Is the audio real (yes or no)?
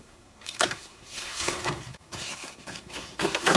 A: no